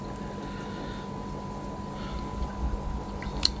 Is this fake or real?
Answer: real